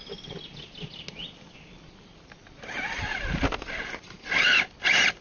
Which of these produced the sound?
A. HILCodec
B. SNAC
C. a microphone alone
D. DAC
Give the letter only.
C